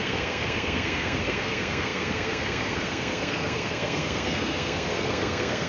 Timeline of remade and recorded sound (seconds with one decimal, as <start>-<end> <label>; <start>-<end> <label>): 0.0-5.7 remade